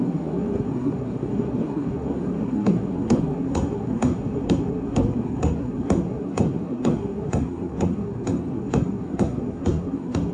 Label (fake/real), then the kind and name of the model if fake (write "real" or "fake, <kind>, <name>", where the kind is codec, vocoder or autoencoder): fake, codec, SNAC